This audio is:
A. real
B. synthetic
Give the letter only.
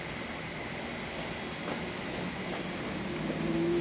A